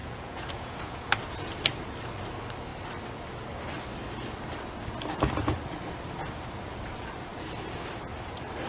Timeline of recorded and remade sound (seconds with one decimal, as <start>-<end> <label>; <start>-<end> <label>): 0.0-1.1 remade; 1.1-8.7 recorded